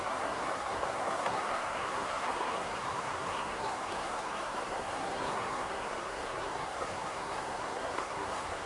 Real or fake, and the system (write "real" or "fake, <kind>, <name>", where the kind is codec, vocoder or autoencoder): fake, codec, SNAC